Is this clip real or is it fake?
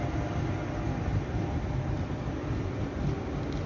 real